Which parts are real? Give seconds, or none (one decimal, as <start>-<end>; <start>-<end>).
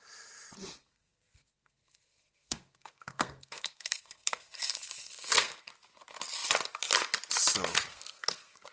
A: 0.0-0.8; 5.7-7.9